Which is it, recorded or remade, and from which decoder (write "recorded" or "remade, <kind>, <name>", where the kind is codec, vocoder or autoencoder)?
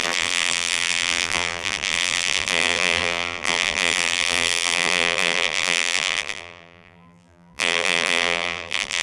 remade, vocoder, BigVGAN v2